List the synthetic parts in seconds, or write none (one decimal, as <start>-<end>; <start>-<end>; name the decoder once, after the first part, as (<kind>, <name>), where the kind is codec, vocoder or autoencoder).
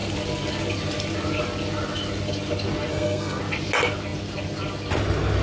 2.9-3.4 (codec, SNAC)